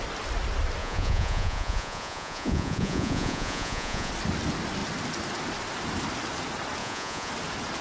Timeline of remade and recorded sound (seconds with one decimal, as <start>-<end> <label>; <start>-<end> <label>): 0.0-0.8 recorded; 0.8-4.1 remade; 4.1-6.8 recorded; 6.8-7.3 remade; 7.3-7.8 recorded

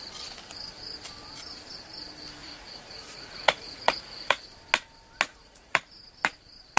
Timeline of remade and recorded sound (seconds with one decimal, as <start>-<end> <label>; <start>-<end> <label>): 0.0-2.4 recorded; 2.4-4.4 remade; 4.4-5.3 recorded; 5.3-6.0 remade; 6.0-6.8 recorded

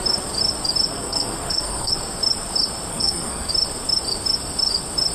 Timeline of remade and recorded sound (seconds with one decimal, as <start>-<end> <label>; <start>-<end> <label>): 0.0-0.9 recorded; 0.9-1.9 remade; 1.9-2.9 recorded; 2.9-3.5 remade; 3.5-5.1 recorded

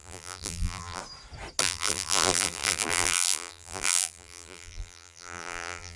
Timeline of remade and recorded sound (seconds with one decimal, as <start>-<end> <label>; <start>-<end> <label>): 0.0-1.0 remade; 1.0-1.6 recorded; 1.6-6.0 remade

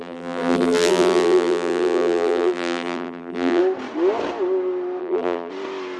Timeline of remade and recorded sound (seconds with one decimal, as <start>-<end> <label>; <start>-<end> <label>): 0.0-3.6 remade; 3.6-5.0 recorded; 5.0-5.5 remade; 5.5-6.0 recorded